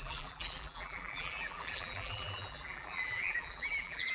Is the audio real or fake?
fake